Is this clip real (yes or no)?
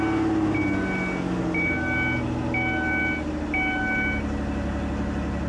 yes